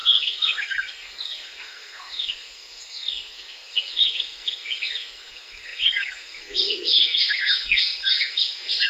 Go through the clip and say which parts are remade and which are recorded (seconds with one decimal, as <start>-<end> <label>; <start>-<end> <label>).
0.0-8.9 remade